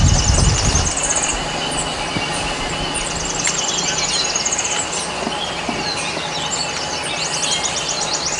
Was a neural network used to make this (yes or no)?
no